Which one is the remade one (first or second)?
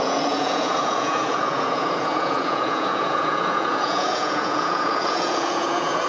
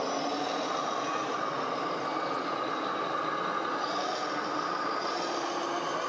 first